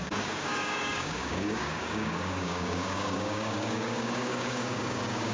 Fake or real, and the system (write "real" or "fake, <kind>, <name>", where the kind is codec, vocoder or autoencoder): fake, codec, DAC